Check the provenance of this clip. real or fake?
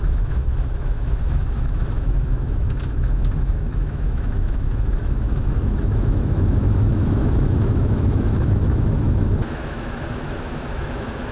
fake